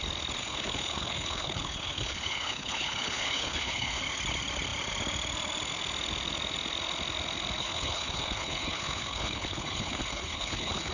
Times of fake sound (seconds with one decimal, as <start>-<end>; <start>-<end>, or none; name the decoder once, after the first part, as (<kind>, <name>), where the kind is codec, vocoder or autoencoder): 0.4-4.0 (codec, HILCodec); 7.6-10.9